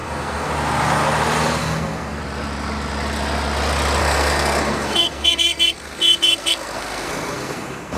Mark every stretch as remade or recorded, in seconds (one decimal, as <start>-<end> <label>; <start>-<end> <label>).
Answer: 0.0-0.5 remade; 0.5-1.6 recorded; 1.6-2.2 remade; 2.2-4.0 recorded; 4.0-8.0 remade